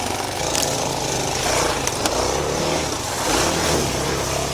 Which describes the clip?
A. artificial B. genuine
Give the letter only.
B